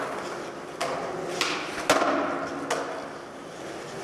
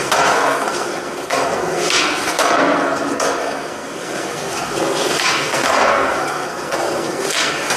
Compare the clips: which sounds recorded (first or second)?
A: first